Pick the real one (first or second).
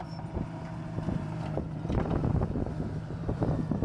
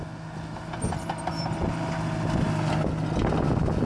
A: second